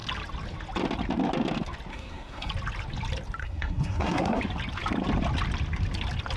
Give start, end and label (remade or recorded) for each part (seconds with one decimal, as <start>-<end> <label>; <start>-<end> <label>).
0.0-1.9 recorded; 1.9-2.5 remade; 2.5-3.4 recorded; 3.4-4.4 remade; 4.4-6.4 recorded